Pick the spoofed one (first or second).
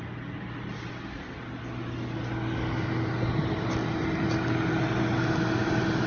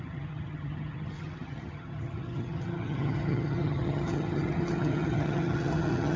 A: second